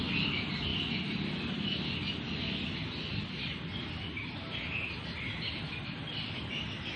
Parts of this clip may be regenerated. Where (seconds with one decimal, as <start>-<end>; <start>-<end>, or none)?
none